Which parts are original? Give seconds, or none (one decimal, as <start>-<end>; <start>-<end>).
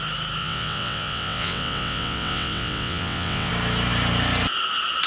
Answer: 0.0-0.4; 3.5-5.1